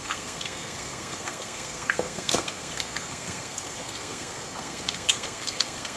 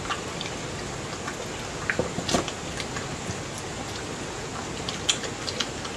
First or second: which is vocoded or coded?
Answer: first